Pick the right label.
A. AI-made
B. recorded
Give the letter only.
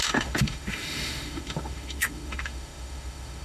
A